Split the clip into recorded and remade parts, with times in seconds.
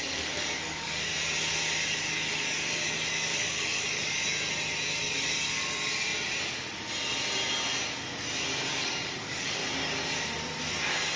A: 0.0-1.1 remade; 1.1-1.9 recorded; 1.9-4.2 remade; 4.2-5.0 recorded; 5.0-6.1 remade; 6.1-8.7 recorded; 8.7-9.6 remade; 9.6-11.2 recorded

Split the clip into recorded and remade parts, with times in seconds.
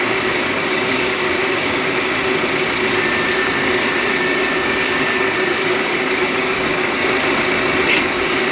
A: 0.0-2.2 remade; 2.2-3.2 recorded; 3.2-7.0 remade; 7.0-7.9 recorded; 7.9-8.5 remade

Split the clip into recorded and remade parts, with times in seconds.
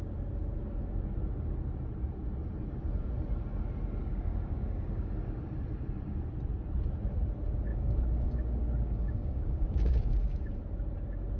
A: 0.0-4.0 recorded; 4.0-5.1 remade; 5.1-7.7 recorded; 7.7-10.5 remade; 10.5-11.4 recorded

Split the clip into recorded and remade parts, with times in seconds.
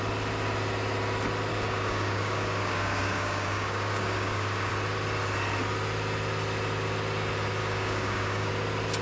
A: 0.0-1.5 recorded; 1.5-4.7 remade; 4.7-7.6 recorded; 7.6-8.5 remade; 8.5-9.0 recorded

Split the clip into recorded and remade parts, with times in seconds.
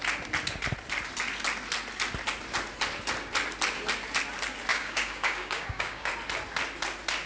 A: 0.0-4.7 recorded; 4.7-6.1 remade; 6.1-7.3 recorded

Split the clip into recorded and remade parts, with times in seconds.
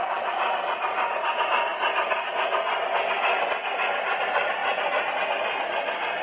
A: 0.0-6.2 recorded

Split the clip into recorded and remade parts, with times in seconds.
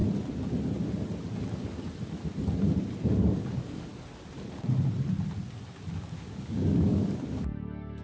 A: 0.0-3.0 recorded; 3.0-3.9 remade; 3.9-5.9 recorded; 5.9-8.0 remade